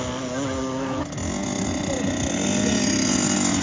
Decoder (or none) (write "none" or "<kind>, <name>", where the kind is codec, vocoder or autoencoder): none